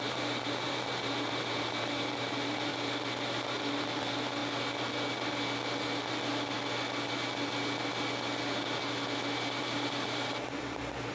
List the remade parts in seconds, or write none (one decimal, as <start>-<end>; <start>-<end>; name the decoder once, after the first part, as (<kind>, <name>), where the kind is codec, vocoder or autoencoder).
0.0-2.7 (vocoder, BigVGAN v2); 3.8-4.4; 9.6-11.1